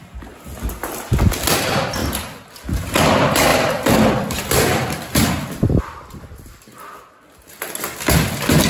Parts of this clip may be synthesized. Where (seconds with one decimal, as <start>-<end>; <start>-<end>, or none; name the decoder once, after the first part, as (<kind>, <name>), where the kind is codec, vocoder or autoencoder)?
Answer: 2.0-2.5 (vocoder, BigVGAN v2); 3.5-5.8